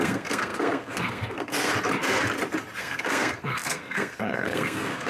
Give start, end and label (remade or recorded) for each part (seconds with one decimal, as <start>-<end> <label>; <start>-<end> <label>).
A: 0.0-1.7 remade; 1.7-2.8 recorded; 2.8-5.1 remade